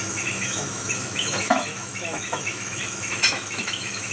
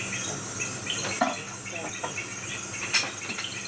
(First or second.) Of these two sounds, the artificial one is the first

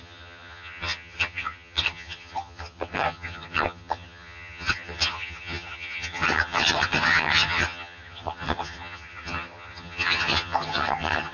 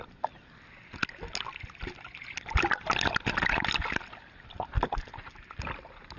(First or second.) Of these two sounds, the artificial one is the first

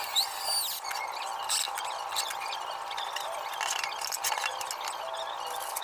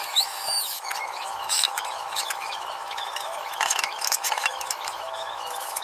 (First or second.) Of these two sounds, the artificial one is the second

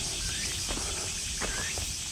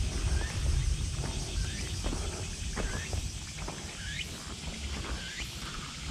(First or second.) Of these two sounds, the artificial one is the first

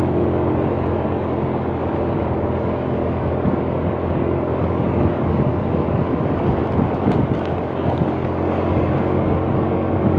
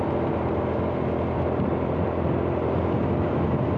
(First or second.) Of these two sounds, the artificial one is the first